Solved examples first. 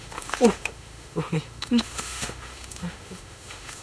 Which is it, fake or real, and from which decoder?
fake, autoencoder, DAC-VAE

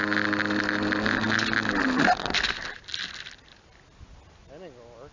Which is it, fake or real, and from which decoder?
real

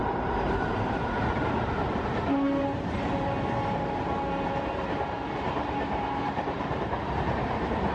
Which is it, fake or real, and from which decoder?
fake, vocoder, BigVGAN v2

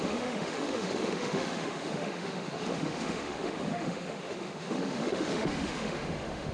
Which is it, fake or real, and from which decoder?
fake, autoencoder, DAC-VAE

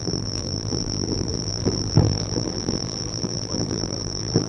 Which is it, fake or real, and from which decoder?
fake, vocoder, BigVGAN v2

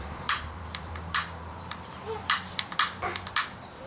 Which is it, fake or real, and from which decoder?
fake, vocoder, BigVGAN v2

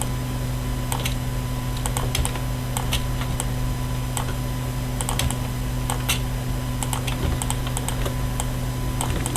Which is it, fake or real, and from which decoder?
real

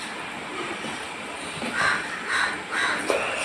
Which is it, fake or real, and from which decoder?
real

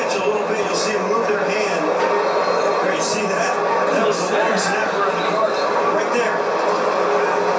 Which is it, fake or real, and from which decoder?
real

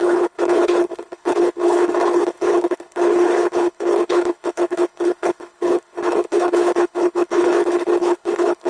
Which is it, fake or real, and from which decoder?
fake, codec, HILCodec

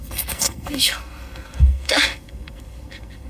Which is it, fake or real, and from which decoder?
fake, codec, SNAC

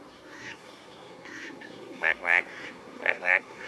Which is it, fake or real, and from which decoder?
fake, codec, SNAC